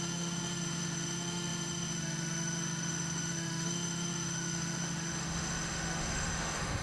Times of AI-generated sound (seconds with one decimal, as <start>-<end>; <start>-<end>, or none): 0.0-6.8